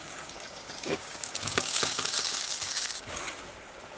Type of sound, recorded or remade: remade